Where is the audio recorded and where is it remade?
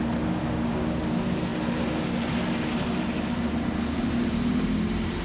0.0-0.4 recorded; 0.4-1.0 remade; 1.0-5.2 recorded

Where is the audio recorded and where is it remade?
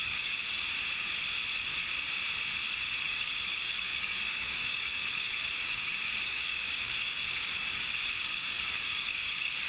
0.0-0.4 remade; 0.4-3.0 recorded; 3.0-9.7 remade